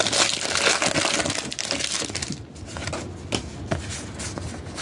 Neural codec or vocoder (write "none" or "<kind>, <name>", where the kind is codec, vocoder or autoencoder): none